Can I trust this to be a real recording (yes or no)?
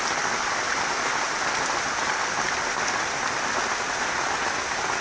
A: yes